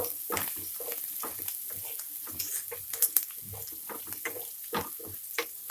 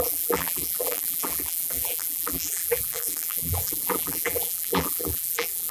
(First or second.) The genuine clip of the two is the first